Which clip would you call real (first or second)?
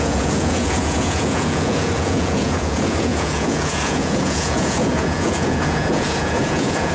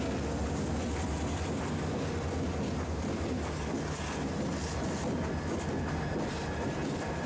second